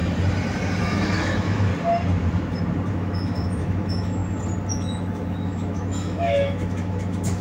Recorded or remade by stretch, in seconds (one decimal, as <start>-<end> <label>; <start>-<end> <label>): 0.0-0.8 recorded; 0.8-1.7 remade; 1.7-2.9 recorded; 2.9-4.2 remade; 4.2-4.7 recorded; 4.7-7.4 remade